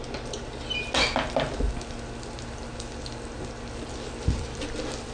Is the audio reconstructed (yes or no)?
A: no